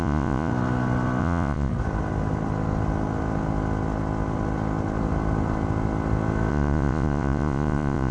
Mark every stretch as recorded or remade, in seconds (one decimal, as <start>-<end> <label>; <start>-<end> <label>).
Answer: 0.0-0.5 remade; 0.5-1.2 recorded; 1.2-1.7 remade; 1.7-6.5 recorded; 6.5-8.1 remade